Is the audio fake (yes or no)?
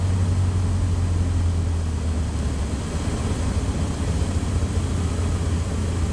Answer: no